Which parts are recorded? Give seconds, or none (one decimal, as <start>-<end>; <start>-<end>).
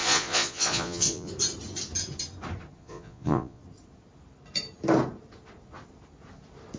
1.3-2.8; 3.6-6.8